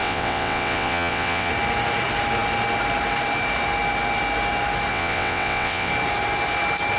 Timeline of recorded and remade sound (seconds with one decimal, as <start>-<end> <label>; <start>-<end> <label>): 0.0-1.5 remade; 1.5-4.9 recorded; 4.9-5.9 remade; 5.9-7.0 recorded